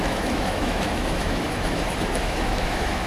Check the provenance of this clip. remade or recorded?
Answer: remade